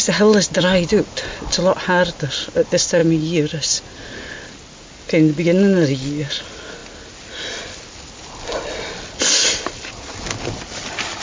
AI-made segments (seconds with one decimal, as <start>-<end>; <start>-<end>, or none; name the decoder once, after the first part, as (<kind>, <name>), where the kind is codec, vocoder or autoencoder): none

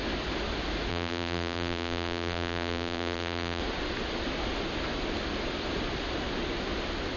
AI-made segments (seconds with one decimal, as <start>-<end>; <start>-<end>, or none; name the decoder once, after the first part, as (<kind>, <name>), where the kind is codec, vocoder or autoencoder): 0.9-3.6 (vocoder, BigVGAN v2)

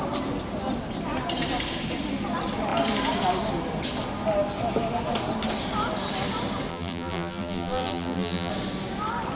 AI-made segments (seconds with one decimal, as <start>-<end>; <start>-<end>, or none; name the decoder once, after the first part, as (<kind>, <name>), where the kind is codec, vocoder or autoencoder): 6.7-8.5 (vocoder, BigVGAN v2)

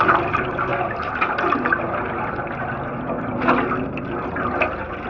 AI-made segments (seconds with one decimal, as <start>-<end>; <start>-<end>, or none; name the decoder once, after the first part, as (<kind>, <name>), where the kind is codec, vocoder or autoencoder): none

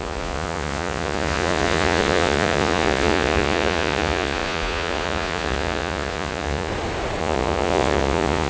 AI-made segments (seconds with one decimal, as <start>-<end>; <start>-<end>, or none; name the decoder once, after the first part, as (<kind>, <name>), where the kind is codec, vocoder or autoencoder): 0.0-6.7 (vocoder, Vocos); 7.2-8.5

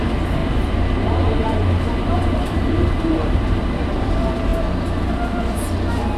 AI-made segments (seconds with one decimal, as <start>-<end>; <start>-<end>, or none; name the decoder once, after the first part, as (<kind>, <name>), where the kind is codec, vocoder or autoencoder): 0.4-4.1 (vocoder, BigVGAN v2)

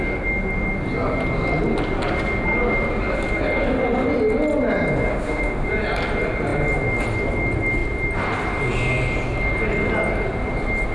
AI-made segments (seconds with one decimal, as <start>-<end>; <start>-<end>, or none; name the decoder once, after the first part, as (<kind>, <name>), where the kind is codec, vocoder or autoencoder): 5.1-5.7 (autoencoder, DAC-VAE)

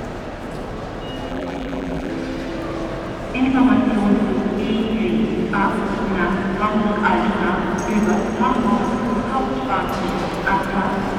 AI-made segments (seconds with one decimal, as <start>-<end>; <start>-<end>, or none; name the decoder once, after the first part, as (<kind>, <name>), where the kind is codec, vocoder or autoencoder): 1.3-2.1 (vocoder, BigVGAN v2)